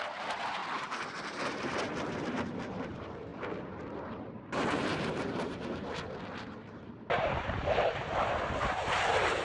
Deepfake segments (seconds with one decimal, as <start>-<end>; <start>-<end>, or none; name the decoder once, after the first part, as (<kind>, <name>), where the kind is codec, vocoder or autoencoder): 0.0-0.6 (vocoder, BigVGAN v2); 1.1-9.4